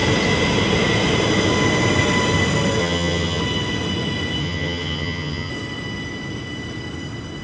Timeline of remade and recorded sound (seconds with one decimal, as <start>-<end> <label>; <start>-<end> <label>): 0.0-2.8 recorded; 2.8-3.4 remade; 3.4-4.4 recorded; 4.4-5.5 remade; 5.5-7.4 recorded